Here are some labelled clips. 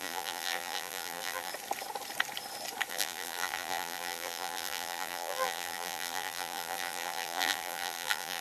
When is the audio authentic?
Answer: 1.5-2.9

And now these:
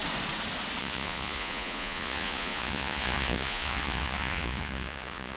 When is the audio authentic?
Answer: 0.0-0.8

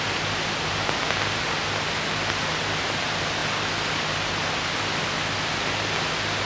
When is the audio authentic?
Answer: 0.0-6.4

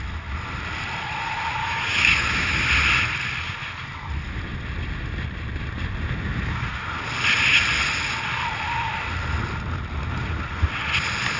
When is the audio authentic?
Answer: 0.0-1.6; 2.6-11.4

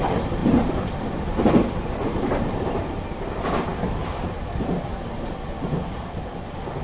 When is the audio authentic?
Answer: 0.0-0.4; 2.8-6.8

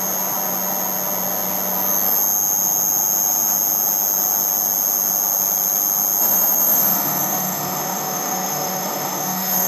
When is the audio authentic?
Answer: 0.0-6.2

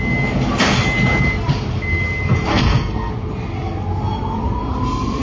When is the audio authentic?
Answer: 0.0-2.5; 3.1-5.2